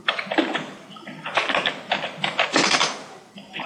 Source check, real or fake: real